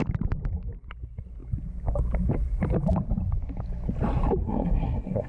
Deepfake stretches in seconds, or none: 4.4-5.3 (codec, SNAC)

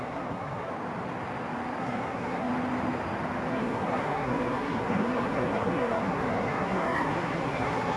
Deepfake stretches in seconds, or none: 0.0-0.7 (codec, SNAC); 1.8-2.5; 3.5-8.0

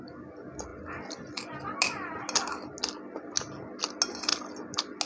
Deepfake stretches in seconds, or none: none

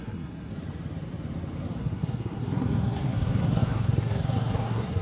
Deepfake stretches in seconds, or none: 0.0-0.5 (codec, SNAC); 1.8-5.0

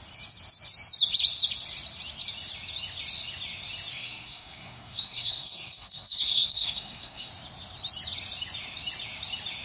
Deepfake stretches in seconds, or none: 3.9-7.3 (codec, SNAC)

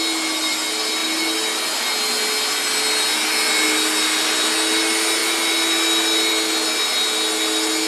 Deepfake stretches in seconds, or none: none

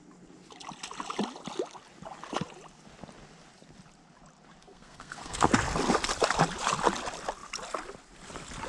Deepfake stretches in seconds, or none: 4.6-5.5 (codec, SNAC)